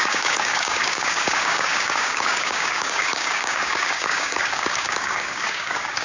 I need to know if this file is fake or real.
fake